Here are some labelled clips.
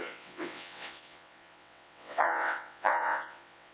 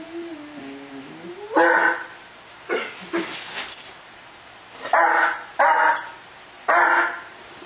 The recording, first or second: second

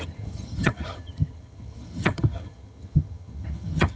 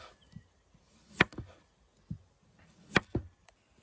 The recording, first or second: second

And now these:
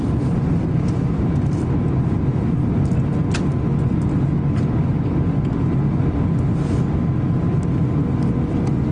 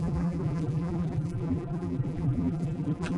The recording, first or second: first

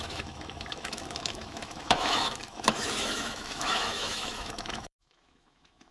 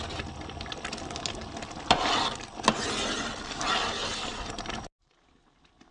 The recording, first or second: second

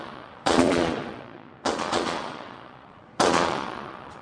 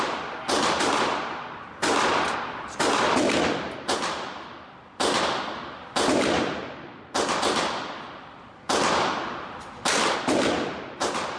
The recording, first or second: second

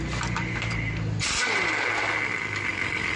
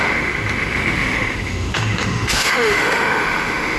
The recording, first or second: first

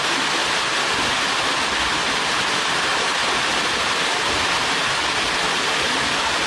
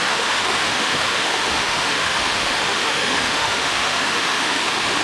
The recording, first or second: first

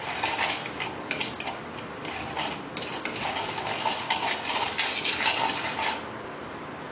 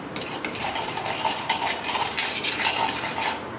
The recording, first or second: first